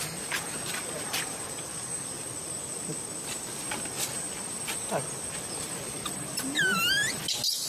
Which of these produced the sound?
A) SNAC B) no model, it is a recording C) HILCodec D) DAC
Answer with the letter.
B